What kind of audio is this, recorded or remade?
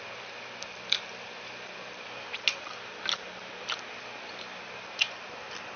recorded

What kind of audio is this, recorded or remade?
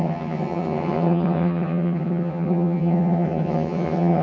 remade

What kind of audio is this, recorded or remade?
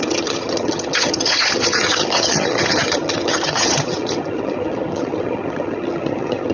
remade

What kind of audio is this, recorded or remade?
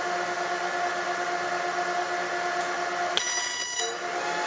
recorded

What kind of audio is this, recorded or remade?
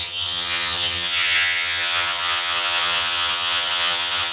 remade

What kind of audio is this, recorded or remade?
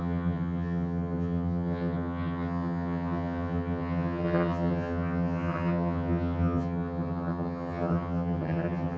remade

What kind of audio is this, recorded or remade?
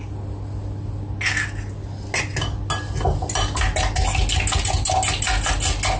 recorded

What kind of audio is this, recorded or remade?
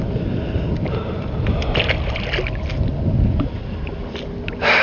recorded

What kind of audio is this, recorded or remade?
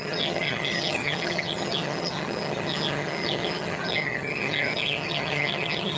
remade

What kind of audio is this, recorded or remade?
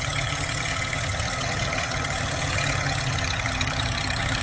remade